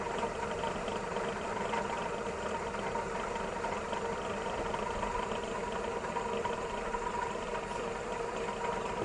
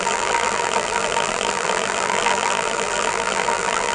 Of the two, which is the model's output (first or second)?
second